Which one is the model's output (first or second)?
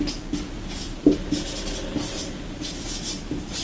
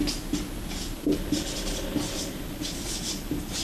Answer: second